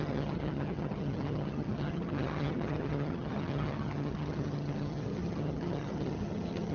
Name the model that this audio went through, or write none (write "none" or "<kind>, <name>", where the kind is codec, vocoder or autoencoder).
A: vocoder, HiFi-GAN